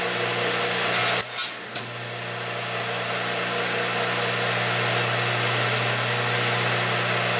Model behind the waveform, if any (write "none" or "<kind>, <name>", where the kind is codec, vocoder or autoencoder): none